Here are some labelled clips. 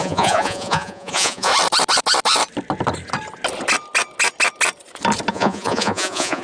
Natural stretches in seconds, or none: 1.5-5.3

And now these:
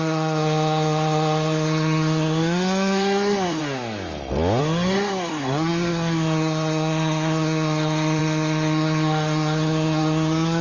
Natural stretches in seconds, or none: 3.6-4.6

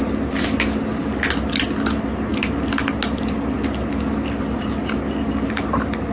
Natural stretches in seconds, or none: 0.0-6.1

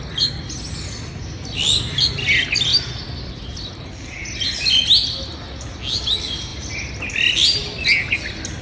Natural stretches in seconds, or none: 0.0-8.6

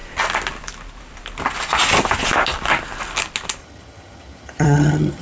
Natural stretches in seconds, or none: 0.0-3.6

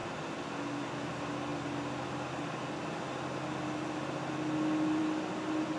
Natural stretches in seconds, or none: 0.0-5.8

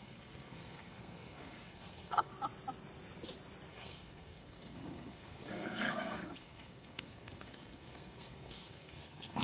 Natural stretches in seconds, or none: 2.3-3.7

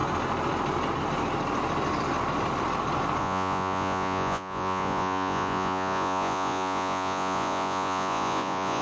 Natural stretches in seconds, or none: 0.0-3.2